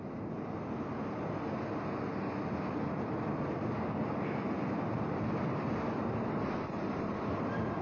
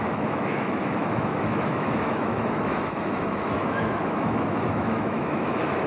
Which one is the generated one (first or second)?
second